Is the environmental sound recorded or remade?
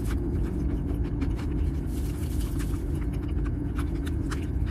recorded